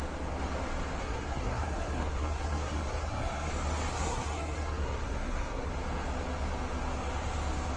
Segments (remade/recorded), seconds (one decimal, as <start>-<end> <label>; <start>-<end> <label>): 0.0-1.0 recorded; 1.0-3.5 remade; 3.5-3.9 recorded; 3.9-5.7 remade; 5.7-7.8 recorded